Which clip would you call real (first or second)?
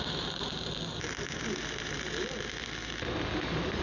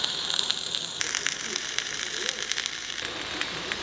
first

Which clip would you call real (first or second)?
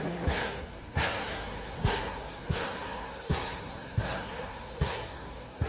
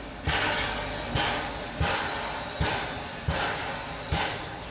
second